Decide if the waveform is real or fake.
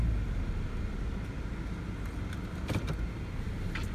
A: real